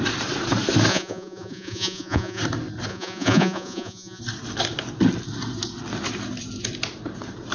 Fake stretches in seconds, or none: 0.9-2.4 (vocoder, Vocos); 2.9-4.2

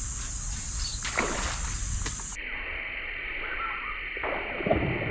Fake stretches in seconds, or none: none

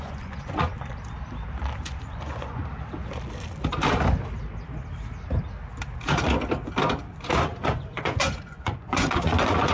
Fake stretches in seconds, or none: 0.0-0.9 (vocoder, Vocos); 1.8-2.6; 7.6-9.7

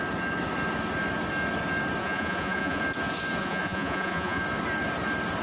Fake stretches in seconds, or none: 2.0-2.8 (vocoder, Vocos); 3.4-4.4

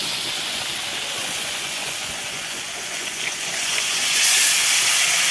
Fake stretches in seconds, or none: 0.0-0.6 (vocoder, Vocos); 1.2-4.4

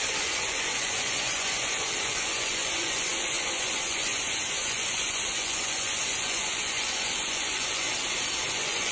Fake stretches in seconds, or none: 0.0-7.9 (vocoder, Vocos); 8.5-8.9

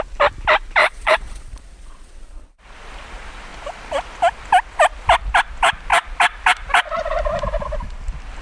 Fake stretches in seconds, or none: 0.8-2.6 (vocoder, Vocos)